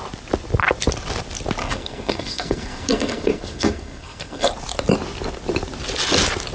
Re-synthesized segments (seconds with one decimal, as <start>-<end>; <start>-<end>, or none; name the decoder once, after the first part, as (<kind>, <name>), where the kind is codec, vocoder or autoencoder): 1.6-4.5 (codec, SNAC)